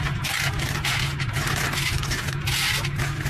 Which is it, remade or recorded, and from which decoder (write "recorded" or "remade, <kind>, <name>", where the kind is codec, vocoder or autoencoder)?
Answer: recorded